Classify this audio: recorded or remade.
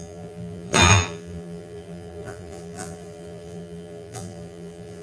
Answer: remade